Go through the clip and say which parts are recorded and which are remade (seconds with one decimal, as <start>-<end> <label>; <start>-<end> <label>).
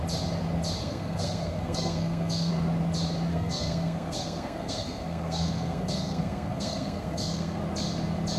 0.0-0.8 recorded; 0.8-2.5 remade; 2.5-3.3 recorded; 3.3-7.6 remade; 7.6-8.4 recorded